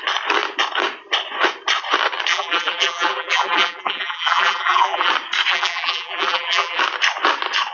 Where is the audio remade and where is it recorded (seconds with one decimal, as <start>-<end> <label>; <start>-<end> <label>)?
0.0-2.3 recorded; 2.3-5.1 remade; 5.1-5.5 recorded; 5.5-6.8 remade; 6.8-7.7 recorded